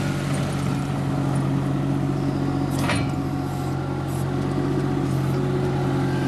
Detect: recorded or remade recorded